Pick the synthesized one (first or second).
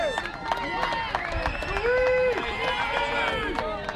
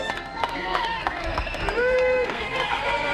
second